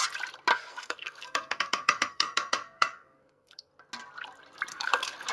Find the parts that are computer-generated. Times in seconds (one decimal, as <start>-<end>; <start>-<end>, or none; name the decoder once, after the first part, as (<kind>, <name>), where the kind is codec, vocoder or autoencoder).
0.5-3.7 (codec, SNAC); 4.7-5.3